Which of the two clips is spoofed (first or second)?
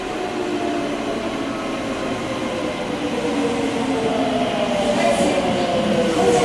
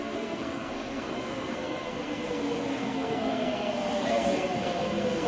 second